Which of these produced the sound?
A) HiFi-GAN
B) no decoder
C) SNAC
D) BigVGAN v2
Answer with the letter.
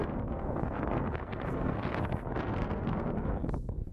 C